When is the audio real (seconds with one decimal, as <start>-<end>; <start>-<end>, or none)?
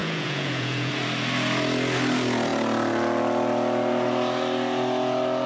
0.9-5.5